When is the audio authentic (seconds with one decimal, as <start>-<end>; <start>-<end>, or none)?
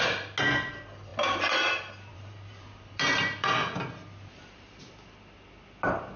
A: 0.0-1.1; 4.8-6.2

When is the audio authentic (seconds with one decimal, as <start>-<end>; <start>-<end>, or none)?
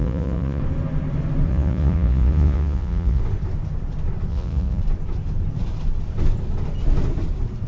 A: 0.6-1.5; 3.2-4.3; 4.8-7.7